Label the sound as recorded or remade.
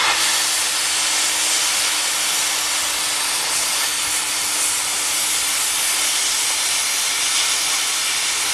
recorded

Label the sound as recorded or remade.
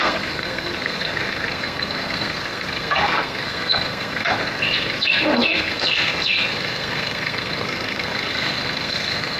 remade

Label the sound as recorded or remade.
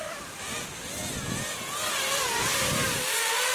recorded